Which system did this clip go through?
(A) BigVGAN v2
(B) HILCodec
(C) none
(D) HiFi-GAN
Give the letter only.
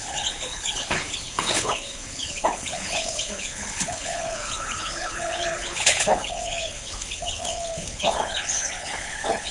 B